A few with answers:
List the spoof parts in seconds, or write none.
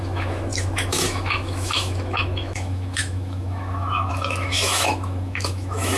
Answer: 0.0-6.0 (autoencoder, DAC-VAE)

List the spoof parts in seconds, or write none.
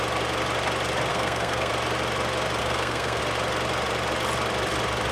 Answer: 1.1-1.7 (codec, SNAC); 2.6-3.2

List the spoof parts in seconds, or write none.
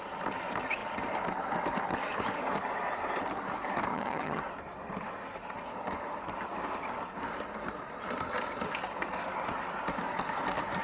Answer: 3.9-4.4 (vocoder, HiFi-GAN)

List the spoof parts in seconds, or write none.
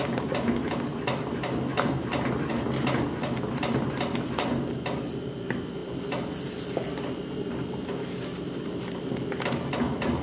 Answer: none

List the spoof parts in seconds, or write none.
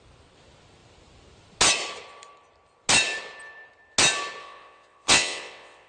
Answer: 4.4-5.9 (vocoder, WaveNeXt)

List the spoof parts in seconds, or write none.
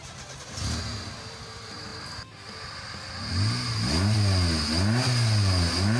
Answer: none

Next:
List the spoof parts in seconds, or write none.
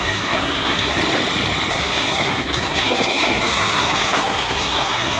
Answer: 0.0-1.0 (codec, SNAC); 1.7-5.2